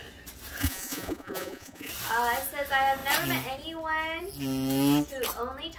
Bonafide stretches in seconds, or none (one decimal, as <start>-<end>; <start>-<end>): 0.0-0.6; 1.9-5.8